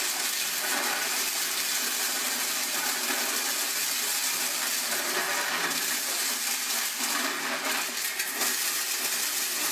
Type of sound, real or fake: real